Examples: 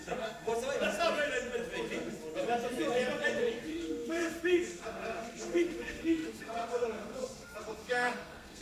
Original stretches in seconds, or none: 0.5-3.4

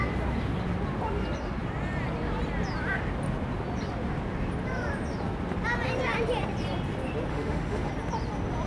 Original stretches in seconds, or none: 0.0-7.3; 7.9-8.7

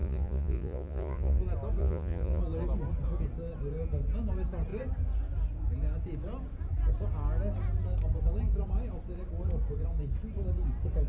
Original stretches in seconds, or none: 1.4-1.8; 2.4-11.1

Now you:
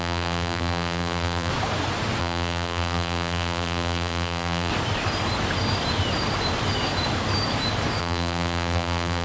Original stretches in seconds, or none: 1.5-2.2; 4.7-8.0

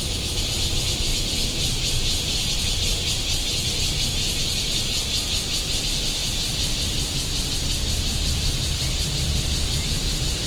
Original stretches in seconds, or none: 1.1-2.6; 4.2-5.8